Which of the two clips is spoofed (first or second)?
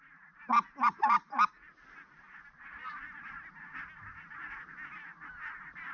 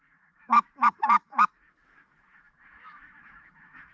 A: second